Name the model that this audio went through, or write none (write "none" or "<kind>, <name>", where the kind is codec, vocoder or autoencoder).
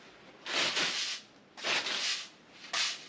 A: none